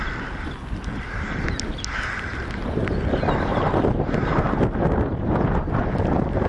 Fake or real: real